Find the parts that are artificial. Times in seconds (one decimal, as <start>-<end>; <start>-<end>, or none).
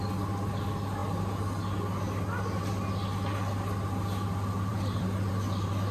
4.7-5.3